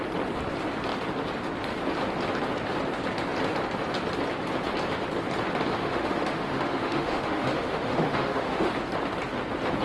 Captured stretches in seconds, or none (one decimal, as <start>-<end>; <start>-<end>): 0.0-5.8; 8.7-9.8